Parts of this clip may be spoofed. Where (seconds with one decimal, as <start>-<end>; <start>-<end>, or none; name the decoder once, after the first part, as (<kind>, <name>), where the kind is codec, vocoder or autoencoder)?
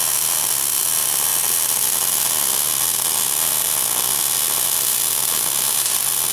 none